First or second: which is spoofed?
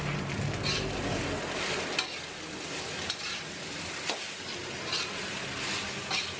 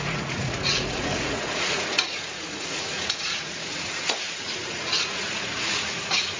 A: second